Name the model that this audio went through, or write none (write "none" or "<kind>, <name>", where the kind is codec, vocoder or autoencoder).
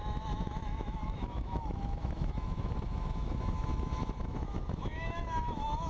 autoencoder, DAC-VAE